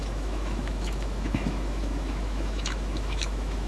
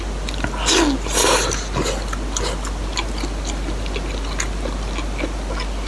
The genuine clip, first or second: second